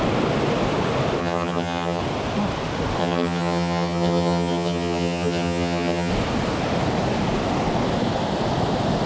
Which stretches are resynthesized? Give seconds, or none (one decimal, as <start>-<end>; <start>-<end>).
1.2-2.0; 3.0-6.1